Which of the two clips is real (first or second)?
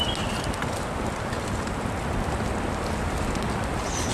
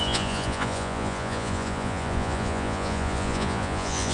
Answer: first